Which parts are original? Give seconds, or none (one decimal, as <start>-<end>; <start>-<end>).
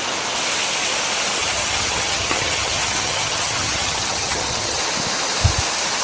0.0-1.4; 4.8-6.0